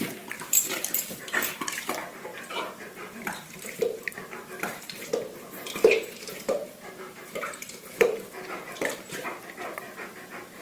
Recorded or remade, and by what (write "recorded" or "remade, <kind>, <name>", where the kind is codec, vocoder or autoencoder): remade, vocoder, BigVGAN v2